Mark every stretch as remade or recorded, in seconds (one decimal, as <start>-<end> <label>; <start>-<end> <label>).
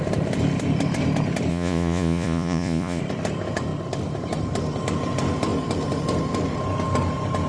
0.0-1.5 recorded; 1.5-3.0 remade; 3.0-7.5 recorded